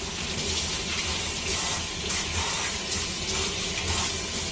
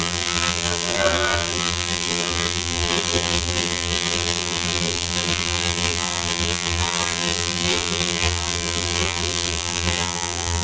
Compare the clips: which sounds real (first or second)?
first